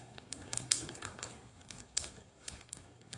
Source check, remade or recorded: remade